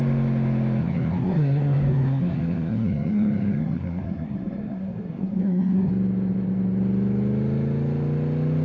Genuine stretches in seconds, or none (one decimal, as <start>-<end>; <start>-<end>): 0.0-0.8; 5.9-8.6